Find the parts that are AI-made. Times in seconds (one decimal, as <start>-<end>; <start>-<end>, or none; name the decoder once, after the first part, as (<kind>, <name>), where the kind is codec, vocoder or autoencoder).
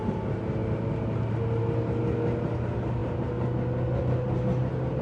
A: none